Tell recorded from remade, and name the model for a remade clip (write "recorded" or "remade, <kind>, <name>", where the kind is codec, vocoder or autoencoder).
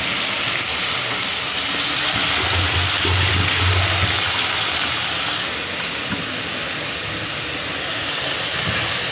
recorded